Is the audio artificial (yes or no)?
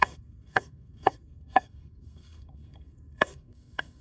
yes